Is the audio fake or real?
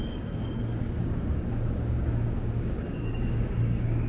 fake